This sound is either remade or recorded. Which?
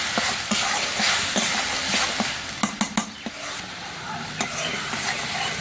recorded